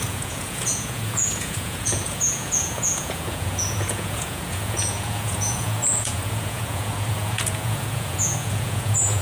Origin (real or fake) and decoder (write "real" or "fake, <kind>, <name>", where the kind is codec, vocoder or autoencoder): fake, vocoder, Vocos